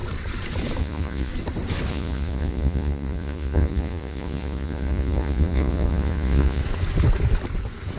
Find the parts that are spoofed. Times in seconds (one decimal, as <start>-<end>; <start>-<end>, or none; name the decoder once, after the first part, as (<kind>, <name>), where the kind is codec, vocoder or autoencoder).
0.8-1.3 (vocoder, Vocos); 1.9-6.6